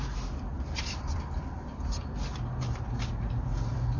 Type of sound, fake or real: fake